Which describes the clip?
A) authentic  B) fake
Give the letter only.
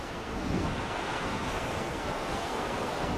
B